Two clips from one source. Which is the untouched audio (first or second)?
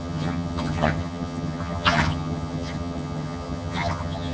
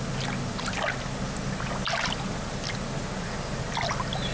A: second